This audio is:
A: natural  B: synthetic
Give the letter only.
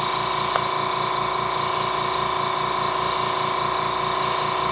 A